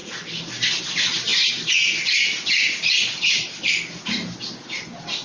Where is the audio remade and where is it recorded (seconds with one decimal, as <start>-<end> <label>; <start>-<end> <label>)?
0.0-5.2 recorded